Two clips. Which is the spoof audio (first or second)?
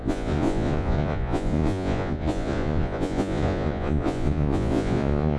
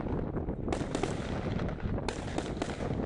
first